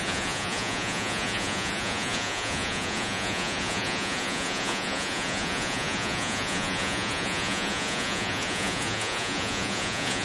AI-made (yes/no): yes